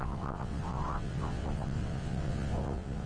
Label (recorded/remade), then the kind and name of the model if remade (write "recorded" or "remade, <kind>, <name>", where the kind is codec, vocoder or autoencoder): remade, vocoder, WaveNeXt